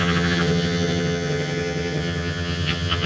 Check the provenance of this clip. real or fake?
fake